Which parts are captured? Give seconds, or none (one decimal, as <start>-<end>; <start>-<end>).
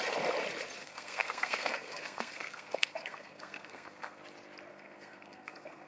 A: 0.0-0.8; 4.2-4.7